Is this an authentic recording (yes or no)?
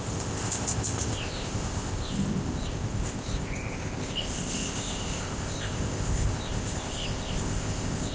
no